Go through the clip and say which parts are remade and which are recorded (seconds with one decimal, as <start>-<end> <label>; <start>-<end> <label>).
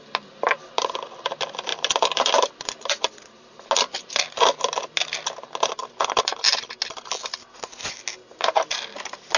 0.0-9.4 recorded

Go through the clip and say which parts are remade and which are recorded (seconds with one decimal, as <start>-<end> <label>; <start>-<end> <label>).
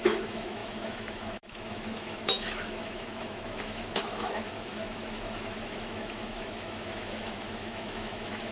0.0-8.5 remade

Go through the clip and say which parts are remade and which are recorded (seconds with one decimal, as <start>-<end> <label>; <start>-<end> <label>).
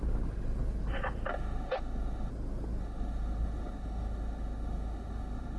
0.0-1.3 recorded; 1.3-2.3 remade; 2.3-2.8 recorded; 2.8-5.6 remade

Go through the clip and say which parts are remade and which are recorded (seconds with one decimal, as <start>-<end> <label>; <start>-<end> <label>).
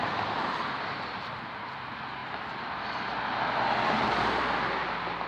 0.0-5.3 recorded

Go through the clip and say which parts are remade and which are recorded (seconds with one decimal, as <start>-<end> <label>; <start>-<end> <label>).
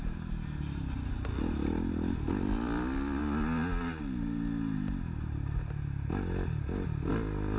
0.0-7.6 recorded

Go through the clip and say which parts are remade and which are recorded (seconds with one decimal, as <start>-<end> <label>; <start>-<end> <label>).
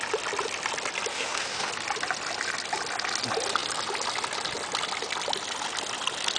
0.0-1.1 recorded; 1.1-1.7 remade; 1.7-6.4 recorded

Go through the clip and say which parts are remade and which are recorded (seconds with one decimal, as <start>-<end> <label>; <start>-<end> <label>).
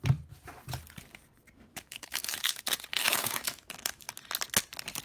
0.0-1.7 recorded; 1.7-2.6 remade; 2.6-3.0 recorded; 3.0-4.1 remade; 4.1-5.0 recorded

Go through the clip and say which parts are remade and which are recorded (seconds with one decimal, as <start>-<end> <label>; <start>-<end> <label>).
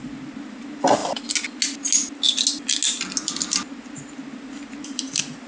0.0-5.5 recorded